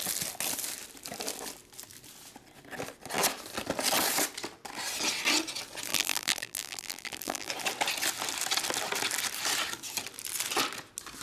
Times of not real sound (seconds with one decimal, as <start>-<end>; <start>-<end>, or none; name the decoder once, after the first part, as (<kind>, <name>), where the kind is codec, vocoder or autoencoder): 5.9-7.5 (vocoder, BigVGAN v2)